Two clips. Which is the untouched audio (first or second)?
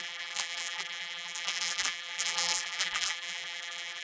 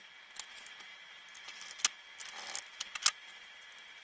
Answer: second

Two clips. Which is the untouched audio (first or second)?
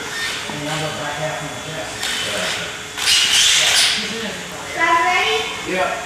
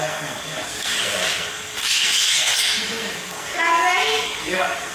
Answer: first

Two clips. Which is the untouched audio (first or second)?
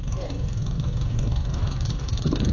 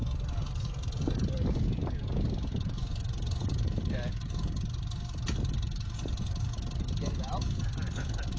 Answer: second